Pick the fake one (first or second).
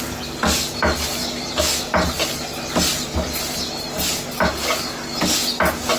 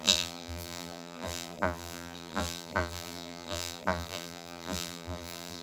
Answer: second